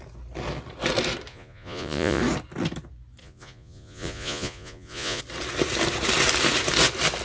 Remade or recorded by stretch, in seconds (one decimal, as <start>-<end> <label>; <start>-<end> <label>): 0.0-1.3 recorded; 1.3-2.2 remade; 2.2-3.2 recorded; 3.2-5.2 remade; 5.2-7.2 recorded